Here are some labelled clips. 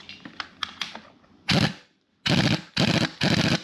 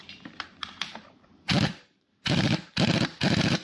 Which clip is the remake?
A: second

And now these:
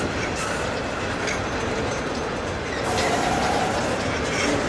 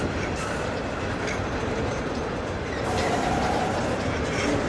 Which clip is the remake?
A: second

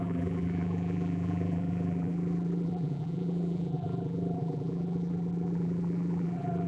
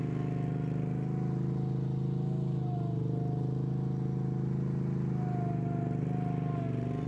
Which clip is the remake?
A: first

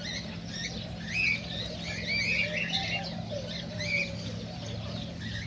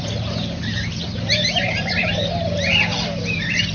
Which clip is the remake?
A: second